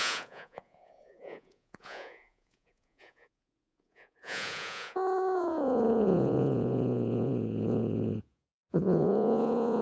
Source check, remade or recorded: remade